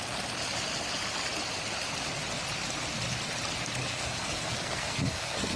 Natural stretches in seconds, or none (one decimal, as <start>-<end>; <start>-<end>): 0.0-3.8